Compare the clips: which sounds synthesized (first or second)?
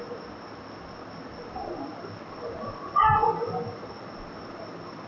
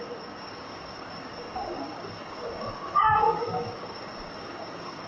second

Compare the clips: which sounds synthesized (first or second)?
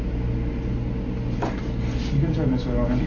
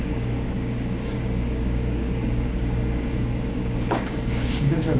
second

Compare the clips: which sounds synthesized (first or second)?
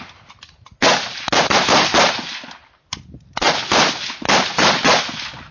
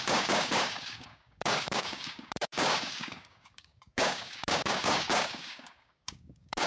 second